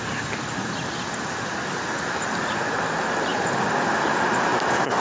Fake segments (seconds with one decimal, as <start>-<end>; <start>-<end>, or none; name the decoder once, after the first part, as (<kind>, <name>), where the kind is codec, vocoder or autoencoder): none